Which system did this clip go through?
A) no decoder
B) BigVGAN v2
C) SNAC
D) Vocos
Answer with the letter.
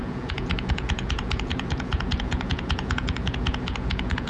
D